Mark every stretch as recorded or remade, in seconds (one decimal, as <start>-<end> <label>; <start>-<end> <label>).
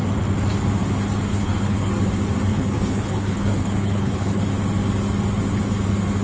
0.0-1.3 recorded; 1.3-1.9 remade; 1.9-2.5 recorded; 2.5-4.4 remade; 4.4-6.2 recorded